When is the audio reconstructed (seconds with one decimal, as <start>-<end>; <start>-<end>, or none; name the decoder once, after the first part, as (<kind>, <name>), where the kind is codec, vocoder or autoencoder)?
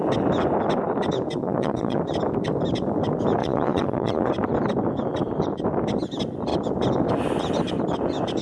1.4-2.0 (vocoder, Vocos); 3.4-4.3